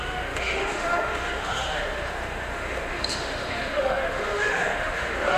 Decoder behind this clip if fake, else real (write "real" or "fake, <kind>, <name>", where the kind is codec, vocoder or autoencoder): fake, autoencoder, DAC-VAE